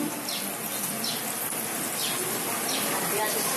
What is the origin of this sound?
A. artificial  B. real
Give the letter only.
B